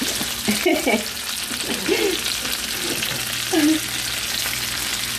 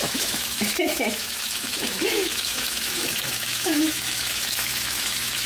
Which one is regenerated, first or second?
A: second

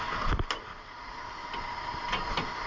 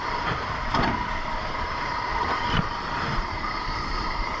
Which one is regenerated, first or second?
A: second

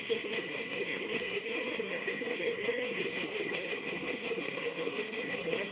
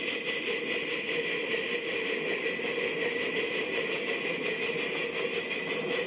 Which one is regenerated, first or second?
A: first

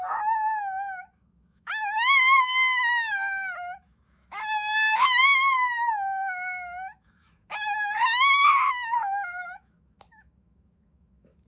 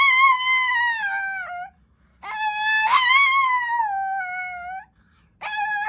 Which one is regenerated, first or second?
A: first